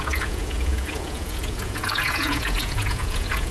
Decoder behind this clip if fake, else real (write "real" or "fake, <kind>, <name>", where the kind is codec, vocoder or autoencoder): fake, vocoder, Vocos